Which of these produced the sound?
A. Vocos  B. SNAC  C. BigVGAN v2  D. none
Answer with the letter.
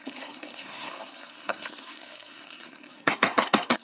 B